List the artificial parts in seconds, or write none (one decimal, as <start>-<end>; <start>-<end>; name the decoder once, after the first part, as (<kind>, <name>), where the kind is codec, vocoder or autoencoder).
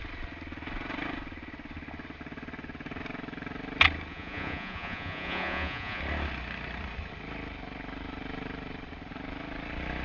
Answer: 4.1-6.0 (vocoder, Vocos)